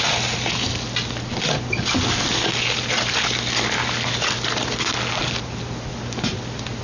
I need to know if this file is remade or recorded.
recorded